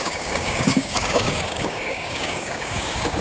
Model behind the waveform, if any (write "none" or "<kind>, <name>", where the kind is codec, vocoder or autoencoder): codec, DAC